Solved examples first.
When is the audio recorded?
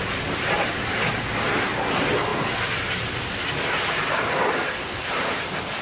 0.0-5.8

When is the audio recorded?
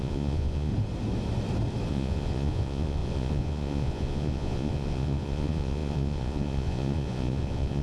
0.7-1.9